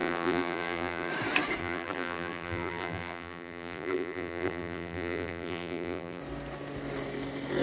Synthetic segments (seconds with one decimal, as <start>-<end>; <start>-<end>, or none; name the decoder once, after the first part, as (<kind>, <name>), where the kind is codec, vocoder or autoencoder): 0.0-1.1 (vocoder, BigVGAN v2); 1.6-6.2